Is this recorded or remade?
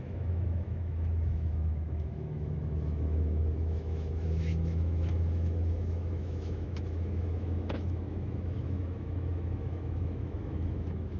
remade